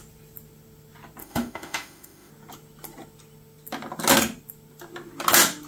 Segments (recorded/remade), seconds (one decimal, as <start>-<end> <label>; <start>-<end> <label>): 0.0-1.2 recorded; 1.2-2.3 remade; 2.3-5.7 recorded